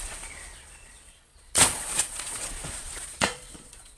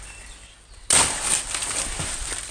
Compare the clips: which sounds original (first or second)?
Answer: second